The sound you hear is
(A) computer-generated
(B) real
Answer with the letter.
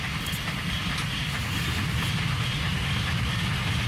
B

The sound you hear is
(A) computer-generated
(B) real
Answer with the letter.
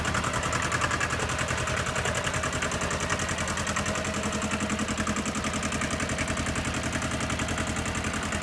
B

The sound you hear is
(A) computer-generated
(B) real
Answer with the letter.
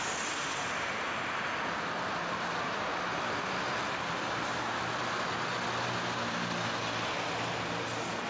B